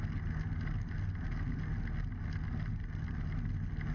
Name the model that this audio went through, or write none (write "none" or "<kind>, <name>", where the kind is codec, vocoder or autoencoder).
none